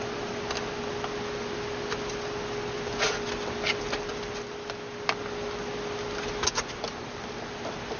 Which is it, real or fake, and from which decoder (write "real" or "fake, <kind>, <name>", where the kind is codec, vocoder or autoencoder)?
real